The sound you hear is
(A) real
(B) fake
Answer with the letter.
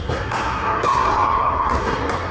B